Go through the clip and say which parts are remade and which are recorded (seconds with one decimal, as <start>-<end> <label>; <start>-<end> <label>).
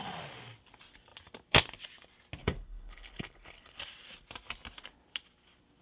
0.0-2.4 recorded; 2.4-3.8 remade; 3.8-5.8 recorded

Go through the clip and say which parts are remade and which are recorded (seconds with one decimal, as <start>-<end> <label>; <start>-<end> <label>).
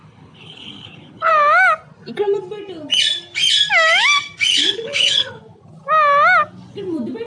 0.0-1.3 remade; 1.3-4.5 recorded; 4.5-5.4 remade; 5.4-7.3 recorded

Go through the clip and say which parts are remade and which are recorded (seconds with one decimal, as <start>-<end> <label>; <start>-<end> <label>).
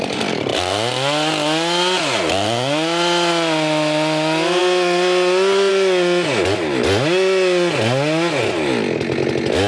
0.0-9.7 recorded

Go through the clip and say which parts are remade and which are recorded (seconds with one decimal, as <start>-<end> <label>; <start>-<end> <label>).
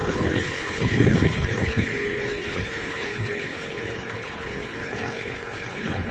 0.0-6.1 remade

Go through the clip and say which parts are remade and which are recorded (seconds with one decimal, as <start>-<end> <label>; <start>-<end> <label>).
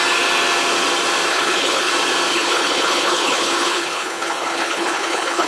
0.0-1.3 recorded; 1.3-1.9 remade; 1.9-2.3 recorded; 2.3-5.5 remade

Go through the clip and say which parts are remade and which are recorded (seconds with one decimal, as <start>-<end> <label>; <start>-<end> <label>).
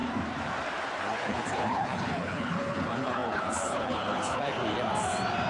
0.0-1.0 recorded; 1.0-4.6 remade; 4.6-5.5 recorded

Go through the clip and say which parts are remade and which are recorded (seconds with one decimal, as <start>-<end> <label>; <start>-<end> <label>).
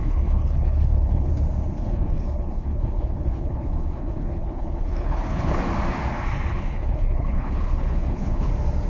0.0-1.3 remade; 1.3-1.8 recorded; 1.8-5.6 remade; 5.6-6.5 recorded; 6.5-8.5 remade; 8.5-8.9 recorded